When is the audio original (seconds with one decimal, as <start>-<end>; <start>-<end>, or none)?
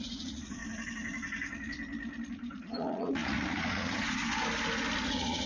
0.6-2.3; 4.2-5.0